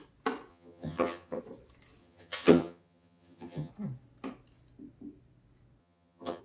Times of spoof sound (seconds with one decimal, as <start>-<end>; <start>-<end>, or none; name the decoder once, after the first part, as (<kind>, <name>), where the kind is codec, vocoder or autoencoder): 0.5-1.4 (vocoder, HiFi-GAN); 2.0-3.7; 5.8-6.4